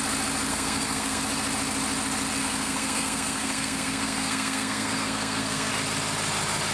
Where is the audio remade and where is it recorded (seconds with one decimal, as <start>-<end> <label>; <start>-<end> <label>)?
0.0-0.5 recorded; 0.5-1.2 remade; 1.2-2.4 recorded; 2.4-5.7 remade; 5.7-6.7 recorded